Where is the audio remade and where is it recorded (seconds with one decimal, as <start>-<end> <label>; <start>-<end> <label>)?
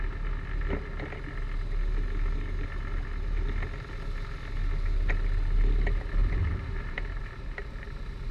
0.0-6.2 recorded; 6.2-8.3 remade